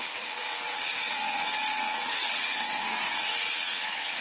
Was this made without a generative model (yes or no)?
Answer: no